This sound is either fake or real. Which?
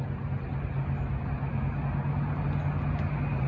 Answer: real